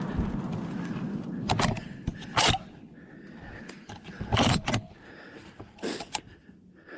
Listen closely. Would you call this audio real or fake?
real